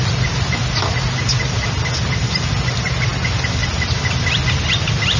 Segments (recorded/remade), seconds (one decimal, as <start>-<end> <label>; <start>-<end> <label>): 0.0-5.2 recorded